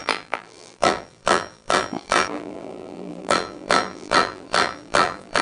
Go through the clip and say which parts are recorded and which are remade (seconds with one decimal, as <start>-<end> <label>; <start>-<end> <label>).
0.0-5.4 remade